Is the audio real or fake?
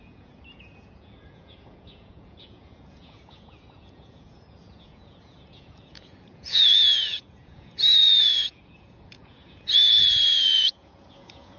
fake